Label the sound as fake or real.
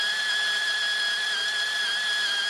real